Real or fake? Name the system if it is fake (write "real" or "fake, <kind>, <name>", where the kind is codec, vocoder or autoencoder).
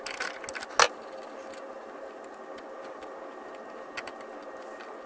real